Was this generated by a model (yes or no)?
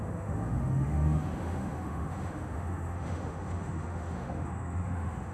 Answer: yes